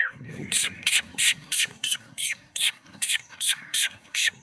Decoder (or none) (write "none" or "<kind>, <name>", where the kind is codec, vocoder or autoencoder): codec, SNAC